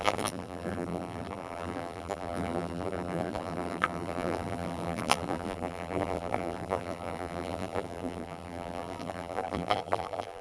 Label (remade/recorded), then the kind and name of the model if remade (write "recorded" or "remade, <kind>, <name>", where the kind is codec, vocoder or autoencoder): remade, vocoder, BigVGAN v2